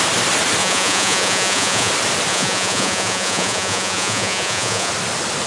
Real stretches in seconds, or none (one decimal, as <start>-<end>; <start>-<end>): 0.0-0.6; 1.9-2.3; 4.9-5.5

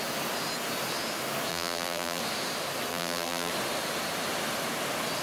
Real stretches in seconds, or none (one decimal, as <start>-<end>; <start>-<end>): 0.0-1.5; 2.2-2.9; 3.5-5.2

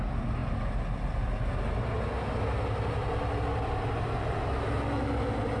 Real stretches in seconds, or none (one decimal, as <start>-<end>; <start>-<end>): 0.0-5.6